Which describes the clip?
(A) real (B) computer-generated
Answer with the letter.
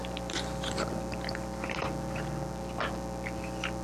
B